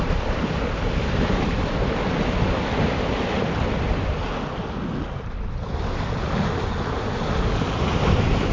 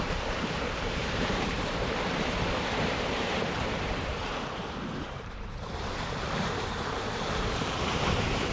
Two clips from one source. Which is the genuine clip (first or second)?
first